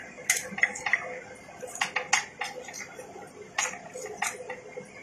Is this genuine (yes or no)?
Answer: yes